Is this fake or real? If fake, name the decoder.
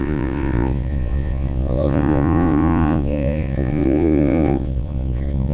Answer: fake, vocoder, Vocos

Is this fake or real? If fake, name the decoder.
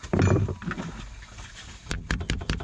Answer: fake, vocoder, BigVGAN v2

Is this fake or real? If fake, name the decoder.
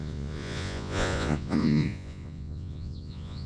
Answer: fake, vocoder, Vocos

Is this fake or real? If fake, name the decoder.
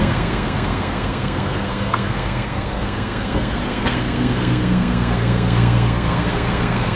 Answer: fake, codec, SNAC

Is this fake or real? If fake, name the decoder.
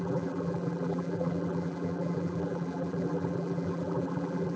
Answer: fake, vocoder, BigVGAN v2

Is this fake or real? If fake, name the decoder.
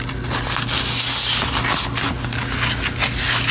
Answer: real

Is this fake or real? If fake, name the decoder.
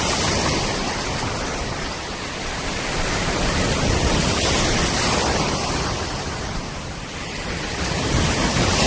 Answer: fake, vocoder, BigVGAN v2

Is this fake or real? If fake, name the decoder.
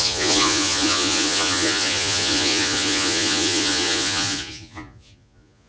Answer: fake, vocoder, Vocos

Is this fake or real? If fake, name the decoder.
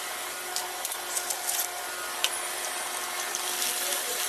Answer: real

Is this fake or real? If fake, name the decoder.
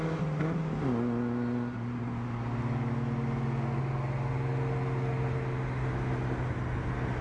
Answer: real